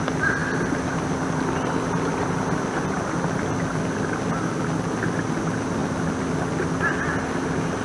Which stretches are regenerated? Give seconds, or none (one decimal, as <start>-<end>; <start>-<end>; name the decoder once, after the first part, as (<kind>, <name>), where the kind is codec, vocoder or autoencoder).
none